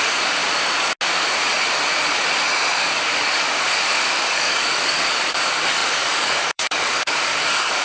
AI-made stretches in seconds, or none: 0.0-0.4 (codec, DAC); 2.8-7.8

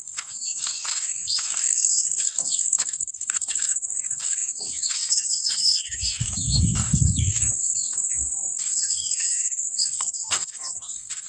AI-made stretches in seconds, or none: 0.0-11.3 (codec, DAC)

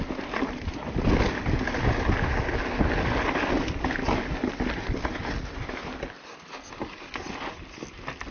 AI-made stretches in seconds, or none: none

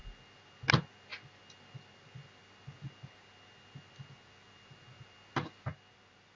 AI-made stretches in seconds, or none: none

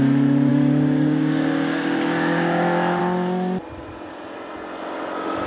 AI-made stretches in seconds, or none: 0.5-3.0 (codec, DAC)